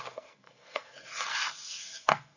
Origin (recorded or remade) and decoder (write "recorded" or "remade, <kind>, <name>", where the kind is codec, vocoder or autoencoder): remade, codec, SNAC